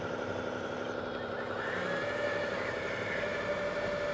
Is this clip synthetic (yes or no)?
no